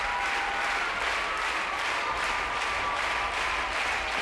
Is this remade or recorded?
recorded